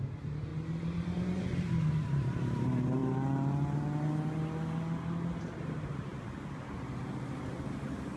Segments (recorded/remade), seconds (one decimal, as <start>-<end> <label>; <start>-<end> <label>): 0.0-0.5 remade; 0.5-1.4 recorded; 1.4-3.0 remade; 3.0-5.4 recorded; 5.4-6.1 remade; 6.1-7.5 recorded; 7.5-8.2 remade